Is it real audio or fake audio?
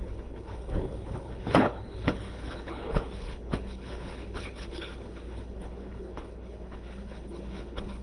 fake